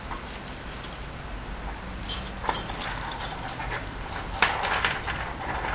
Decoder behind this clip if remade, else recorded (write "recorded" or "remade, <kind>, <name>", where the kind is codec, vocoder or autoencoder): recorded